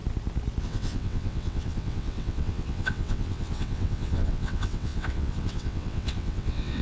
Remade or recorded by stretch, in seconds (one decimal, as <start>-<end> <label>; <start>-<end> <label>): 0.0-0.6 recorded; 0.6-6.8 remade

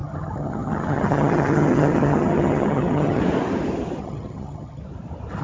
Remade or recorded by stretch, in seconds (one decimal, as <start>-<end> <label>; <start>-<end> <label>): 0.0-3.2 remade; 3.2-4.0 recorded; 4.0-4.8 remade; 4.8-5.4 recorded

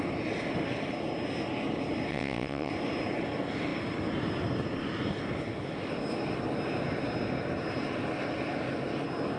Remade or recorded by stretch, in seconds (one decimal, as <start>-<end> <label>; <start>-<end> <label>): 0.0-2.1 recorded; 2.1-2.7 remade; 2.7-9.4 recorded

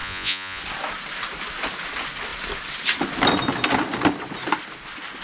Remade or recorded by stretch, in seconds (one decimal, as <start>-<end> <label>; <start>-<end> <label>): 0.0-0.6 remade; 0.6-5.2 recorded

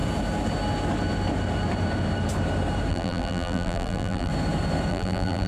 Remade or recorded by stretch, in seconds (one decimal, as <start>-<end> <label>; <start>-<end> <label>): 0.0-2.9 recorded; 2.9-4.3 remade; 4.3-4.9 recorded; 4.9-5.5 remade

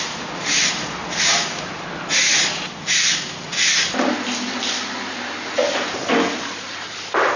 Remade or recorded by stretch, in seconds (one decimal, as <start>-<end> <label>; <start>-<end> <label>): 0.0-1.0 recorded; 1.0-1.5 remade; 1.5-7.4 recorded

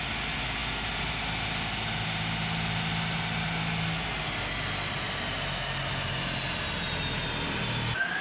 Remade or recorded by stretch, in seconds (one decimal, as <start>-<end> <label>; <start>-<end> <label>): 0.0-8.2 recorded

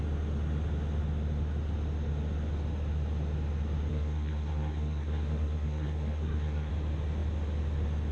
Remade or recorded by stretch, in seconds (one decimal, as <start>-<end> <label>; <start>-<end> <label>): 0.0-3.9 recorded; 3.9-6.7 remade; 6.7-8.1 recorded